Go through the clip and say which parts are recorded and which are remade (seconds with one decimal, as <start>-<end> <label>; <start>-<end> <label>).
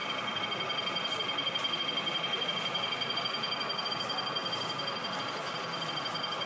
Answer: 0.0-6.5 recorded